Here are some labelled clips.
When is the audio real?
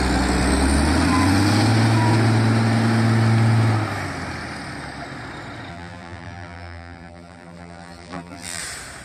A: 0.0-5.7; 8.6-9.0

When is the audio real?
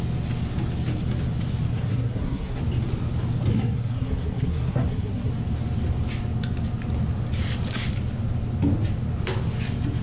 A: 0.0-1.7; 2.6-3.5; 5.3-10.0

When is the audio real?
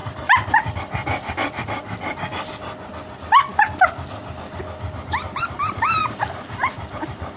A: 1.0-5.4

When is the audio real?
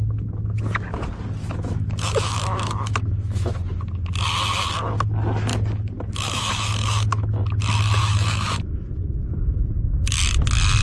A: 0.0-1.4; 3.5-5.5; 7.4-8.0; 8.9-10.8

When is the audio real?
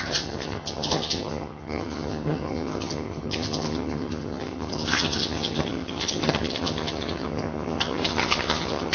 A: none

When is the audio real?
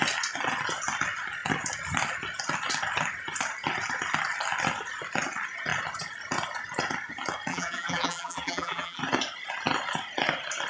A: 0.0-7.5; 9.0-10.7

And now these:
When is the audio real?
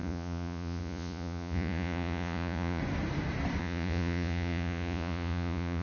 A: 2.8-3.6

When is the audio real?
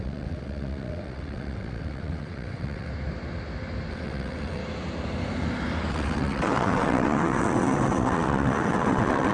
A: 2.9-3.9; 4.6-5.9